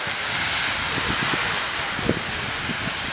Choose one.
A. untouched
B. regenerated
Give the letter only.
A